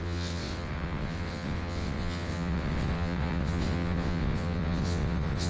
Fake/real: fake